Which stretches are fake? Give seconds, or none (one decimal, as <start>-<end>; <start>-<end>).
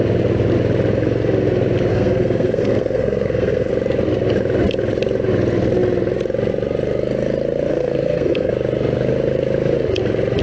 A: 1.9-3.7; 7.7-8.5